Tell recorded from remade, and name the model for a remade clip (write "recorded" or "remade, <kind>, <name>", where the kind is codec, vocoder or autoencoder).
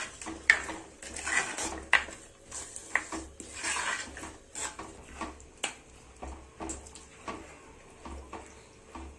recorded